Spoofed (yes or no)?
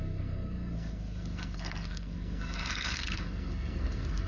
yes